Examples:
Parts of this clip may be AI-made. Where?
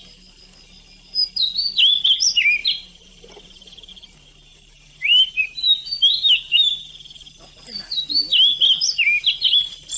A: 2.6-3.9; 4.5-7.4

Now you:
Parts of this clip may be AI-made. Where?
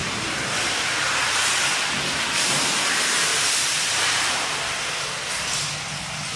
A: 3.3-4.6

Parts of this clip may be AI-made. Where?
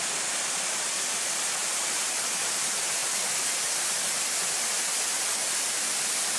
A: 1.6-2.3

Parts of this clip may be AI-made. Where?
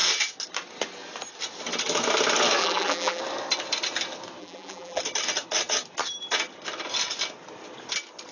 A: 2.6-3.2; 4.4-5.0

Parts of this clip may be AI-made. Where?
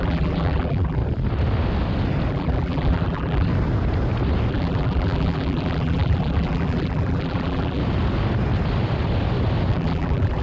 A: 0.0-1.0; 2.3-3.5; 4.5-7.8; 9.7-10.4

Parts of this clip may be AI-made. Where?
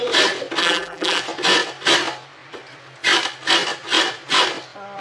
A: 0.6-1.2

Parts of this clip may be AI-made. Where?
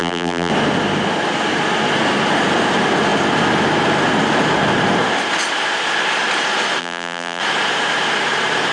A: 0.0-0.5; 6.8-7.4